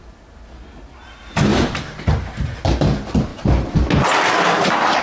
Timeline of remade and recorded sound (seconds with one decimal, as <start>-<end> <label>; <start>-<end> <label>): 0.0-1.5 recorded; 1.5-2.6 remade; 2.6-5.0 recorded